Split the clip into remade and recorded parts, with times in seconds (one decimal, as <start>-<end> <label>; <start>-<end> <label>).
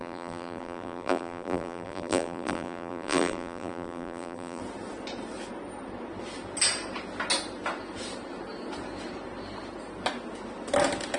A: 0.0-4.6 remade; 4.6-11.2 recorded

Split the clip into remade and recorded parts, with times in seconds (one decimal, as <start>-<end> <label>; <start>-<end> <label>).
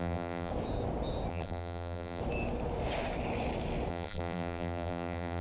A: 0.0-0.5 remade; 0.5-1.3 recorded; 1.3-2.2 remade; 2.2-3.9 recorded; 3.9-5.4 remade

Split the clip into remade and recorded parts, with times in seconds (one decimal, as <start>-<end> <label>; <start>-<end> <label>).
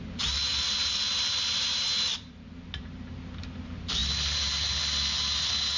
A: 0.0-0.5 recorded; 0.5-2.3 remade; 2.3-5.8 recorded